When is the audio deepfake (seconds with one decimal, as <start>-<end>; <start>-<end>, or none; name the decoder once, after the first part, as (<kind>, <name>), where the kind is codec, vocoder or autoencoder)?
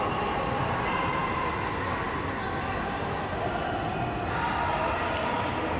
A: none